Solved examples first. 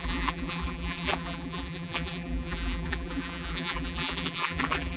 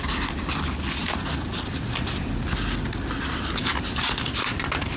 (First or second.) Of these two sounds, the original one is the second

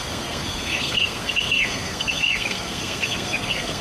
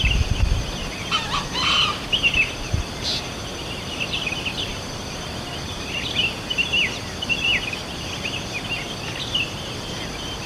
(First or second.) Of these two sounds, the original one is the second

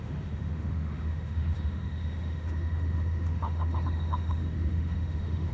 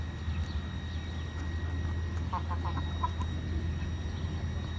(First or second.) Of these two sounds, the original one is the second